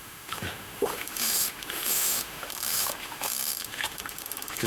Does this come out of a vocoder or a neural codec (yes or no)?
yes